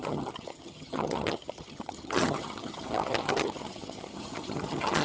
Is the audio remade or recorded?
remade